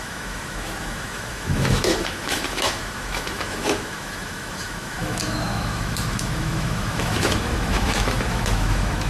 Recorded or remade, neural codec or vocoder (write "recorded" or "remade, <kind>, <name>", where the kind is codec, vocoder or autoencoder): remade, autoencoder, DAC-VAE